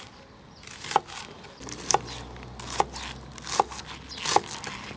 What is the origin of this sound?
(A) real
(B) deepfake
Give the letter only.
A